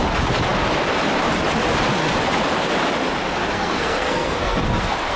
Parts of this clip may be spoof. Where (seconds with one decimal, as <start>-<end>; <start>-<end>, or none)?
3.4-5.2

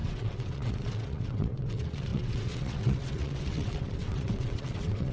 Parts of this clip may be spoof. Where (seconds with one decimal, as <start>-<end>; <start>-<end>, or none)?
0.0-5.1

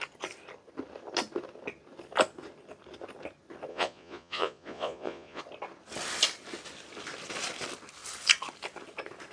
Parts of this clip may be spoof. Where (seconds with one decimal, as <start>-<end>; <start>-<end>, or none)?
3.7-5.4

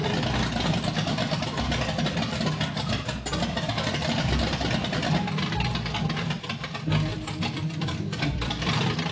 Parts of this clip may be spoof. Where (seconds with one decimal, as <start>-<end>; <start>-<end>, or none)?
7.1-9.1